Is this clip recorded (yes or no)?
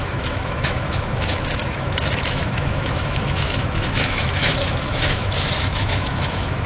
no